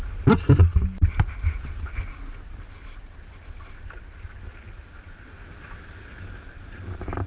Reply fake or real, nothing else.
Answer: real